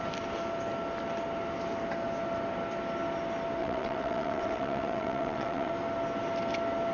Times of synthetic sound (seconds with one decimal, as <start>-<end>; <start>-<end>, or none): 3.6-5.7